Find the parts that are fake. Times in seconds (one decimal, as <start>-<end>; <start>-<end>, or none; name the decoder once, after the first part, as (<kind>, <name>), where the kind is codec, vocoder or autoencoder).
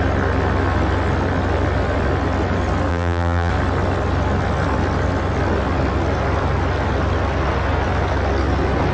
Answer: 2.9-3.5 (vocoder, BigVGAN v2)